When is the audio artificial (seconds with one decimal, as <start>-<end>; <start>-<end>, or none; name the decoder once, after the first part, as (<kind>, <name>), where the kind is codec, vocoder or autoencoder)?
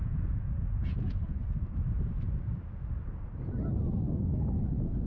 0.0-1.4 (vocoder, Vocos); 4.5-5.1